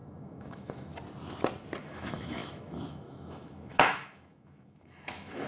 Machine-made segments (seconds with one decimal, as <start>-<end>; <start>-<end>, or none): 0.0-0.9; 1.8-5.5